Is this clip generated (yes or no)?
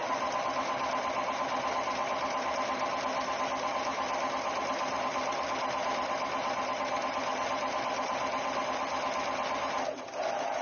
no